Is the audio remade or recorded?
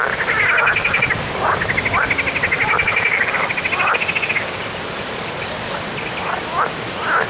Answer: recorded